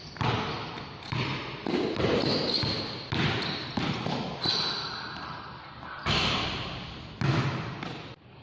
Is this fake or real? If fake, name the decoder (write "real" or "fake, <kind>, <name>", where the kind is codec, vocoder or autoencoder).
real